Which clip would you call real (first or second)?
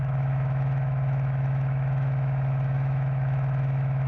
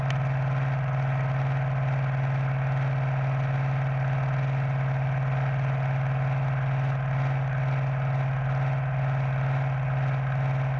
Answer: second